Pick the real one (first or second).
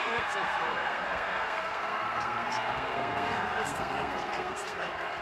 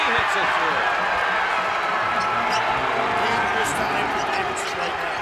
second